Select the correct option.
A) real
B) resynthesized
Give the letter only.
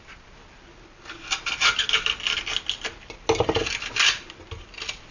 A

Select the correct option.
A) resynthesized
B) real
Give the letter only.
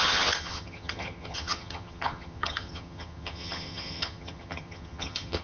A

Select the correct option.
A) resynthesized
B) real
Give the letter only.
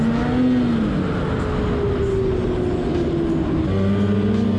B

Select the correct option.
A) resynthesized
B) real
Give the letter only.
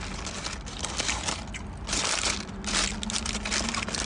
B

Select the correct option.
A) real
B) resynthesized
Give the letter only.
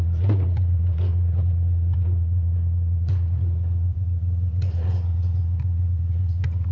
B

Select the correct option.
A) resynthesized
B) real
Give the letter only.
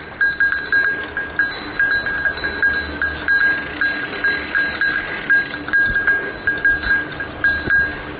B